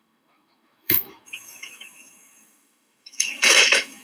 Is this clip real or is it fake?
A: fake